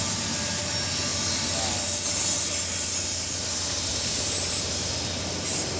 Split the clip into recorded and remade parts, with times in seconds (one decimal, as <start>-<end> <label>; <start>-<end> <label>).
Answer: 0.0-3.9 recorded; 3.9-4.9 remade; 4.9-5.8 recorded